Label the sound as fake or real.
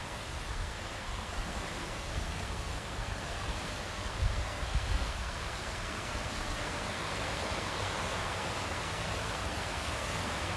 fake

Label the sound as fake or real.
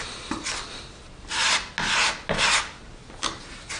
real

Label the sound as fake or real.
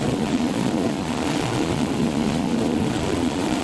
fake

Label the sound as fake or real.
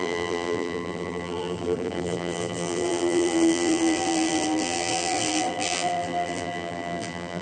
fake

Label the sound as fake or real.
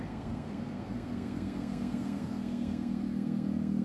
fake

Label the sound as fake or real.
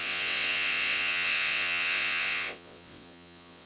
fake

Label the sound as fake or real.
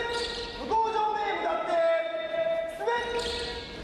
real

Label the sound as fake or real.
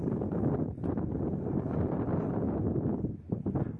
real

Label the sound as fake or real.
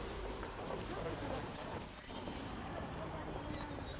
fake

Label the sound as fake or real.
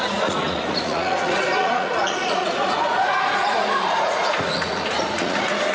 fake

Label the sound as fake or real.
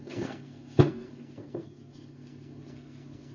fake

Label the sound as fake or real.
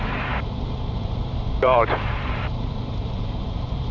fake